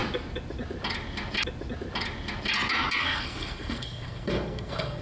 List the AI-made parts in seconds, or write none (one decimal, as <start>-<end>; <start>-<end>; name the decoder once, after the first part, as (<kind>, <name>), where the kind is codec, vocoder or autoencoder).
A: 3.0-5.0 (codec, SNAC)